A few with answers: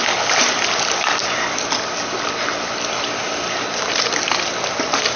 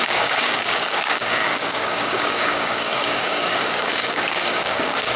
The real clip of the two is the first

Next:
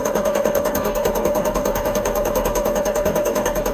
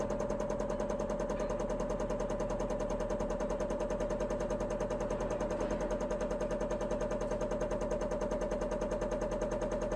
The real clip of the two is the second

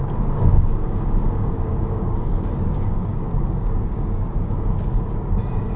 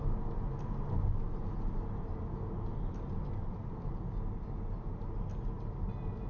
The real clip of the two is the second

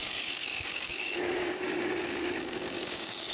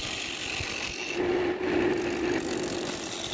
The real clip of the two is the second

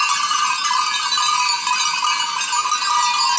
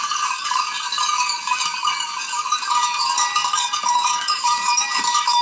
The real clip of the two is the first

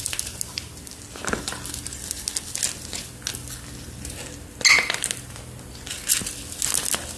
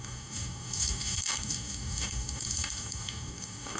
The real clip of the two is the first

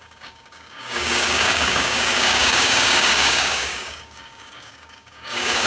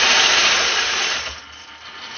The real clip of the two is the second